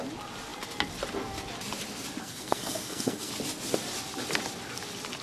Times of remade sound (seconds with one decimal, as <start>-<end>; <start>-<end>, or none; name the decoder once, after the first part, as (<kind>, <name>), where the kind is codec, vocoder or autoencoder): 2.2-3.3 (codec, SNAC)